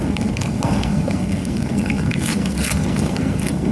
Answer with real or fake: fake